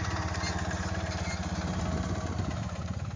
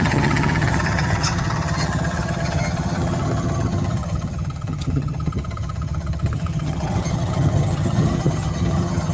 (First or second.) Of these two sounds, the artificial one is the second